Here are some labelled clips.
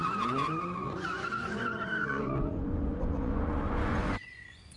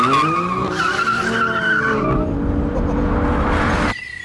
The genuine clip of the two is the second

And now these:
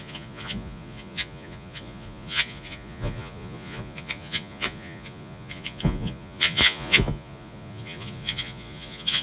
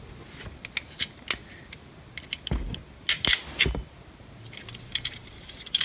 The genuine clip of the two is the second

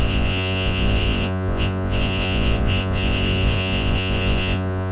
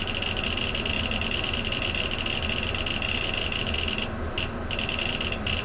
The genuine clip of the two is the second